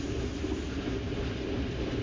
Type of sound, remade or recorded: recorded